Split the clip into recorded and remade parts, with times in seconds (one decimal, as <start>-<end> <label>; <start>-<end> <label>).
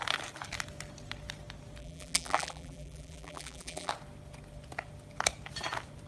0.0-1.8 recorded; 1.8-3.9 remade; 3.9-6.1 recorded